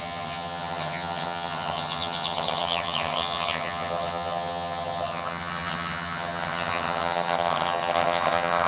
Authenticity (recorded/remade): remade